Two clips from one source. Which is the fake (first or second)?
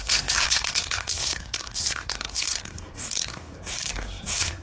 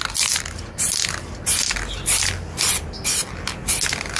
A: first